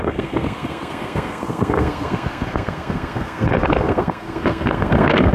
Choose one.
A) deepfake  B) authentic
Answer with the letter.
A